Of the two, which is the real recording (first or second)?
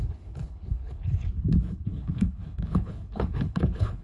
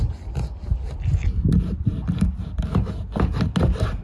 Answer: second